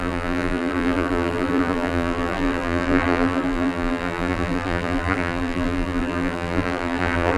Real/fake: fake